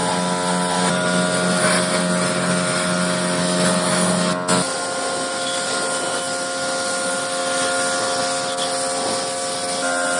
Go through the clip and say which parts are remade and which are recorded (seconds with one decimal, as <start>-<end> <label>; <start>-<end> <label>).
0.0-10.2 recorded